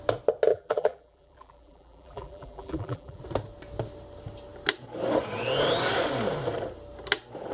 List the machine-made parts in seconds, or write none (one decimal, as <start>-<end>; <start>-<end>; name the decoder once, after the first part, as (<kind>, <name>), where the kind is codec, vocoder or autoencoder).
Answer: 0.5-3.2 (vocoder, BigVGAN v2)